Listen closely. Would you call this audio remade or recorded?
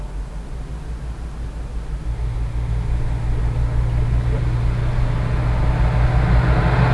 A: recorded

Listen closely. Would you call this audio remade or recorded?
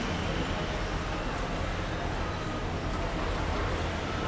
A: recorded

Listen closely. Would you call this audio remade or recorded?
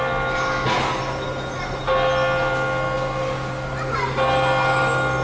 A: recorded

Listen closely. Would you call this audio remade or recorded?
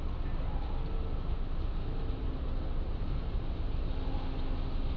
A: recorded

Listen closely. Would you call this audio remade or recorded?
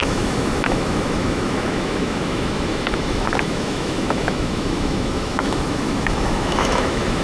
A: remade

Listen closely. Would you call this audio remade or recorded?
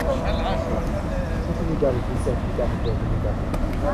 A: recorded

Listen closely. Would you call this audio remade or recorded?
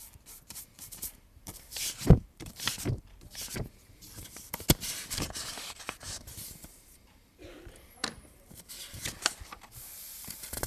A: remade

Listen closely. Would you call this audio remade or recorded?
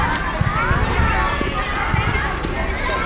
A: recorded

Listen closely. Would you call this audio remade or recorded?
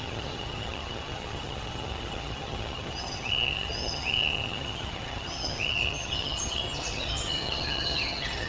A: remade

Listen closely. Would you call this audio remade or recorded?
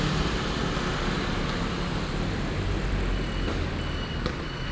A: recorded